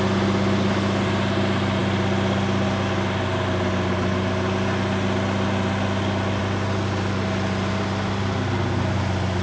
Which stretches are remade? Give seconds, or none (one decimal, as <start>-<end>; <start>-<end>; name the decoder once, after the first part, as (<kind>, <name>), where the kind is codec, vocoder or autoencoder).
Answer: none